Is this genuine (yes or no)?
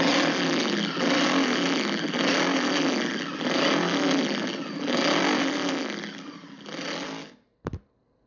yes